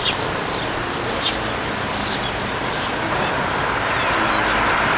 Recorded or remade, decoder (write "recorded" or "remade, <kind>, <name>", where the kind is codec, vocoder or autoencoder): recorded